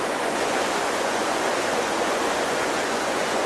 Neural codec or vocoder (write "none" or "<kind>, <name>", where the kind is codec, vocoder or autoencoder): vocoder, Vocos